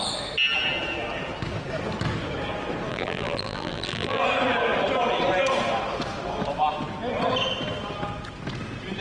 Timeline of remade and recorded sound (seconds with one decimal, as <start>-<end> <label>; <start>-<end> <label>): 0.0-2.9 recorded; 2.9-4.2 remade; 4.2-9.0 recorded